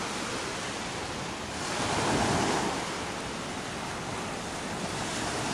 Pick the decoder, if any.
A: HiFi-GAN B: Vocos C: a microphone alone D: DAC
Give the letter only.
C